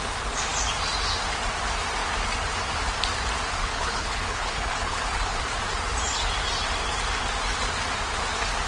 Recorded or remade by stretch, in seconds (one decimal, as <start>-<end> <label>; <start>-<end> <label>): 0.0-3.6 recorded; 3.6-5.6 remade; 5.6-8.7 recorded